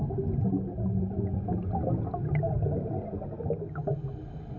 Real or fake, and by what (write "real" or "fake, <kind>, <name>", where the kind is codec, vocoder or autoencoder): real